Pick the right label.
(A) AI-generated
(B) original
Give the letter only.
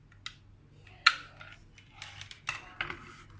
B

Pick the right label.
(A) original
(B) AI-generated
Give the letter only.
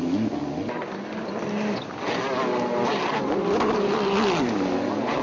A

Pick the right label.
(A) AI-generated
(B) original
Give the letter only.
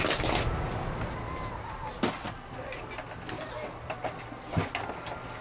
B